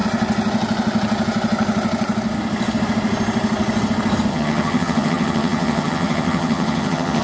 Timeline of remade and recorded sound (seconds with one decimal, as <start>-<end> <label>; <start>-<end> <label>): 0.0-4.3 recorded; 4.3-7.2 remade